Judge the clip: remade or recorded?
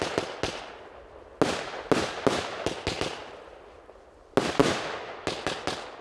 recorded